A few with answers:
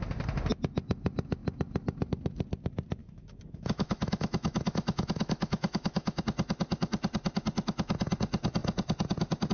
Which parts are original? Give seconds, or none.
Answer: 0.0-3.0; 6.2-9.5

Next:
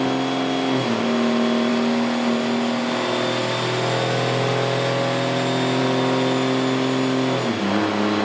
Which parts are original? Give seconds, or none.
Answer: 0.0-8.2